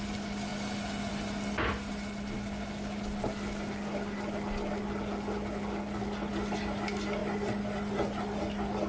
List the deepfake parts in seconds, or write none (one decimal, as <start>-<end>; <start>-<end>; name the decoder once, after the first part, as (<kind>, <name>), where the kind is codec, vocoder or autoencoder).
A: none